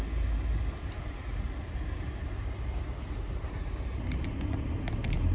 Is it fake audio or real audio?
real